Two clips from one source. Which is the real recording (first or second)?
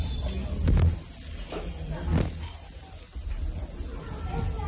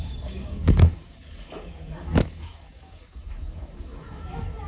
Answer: first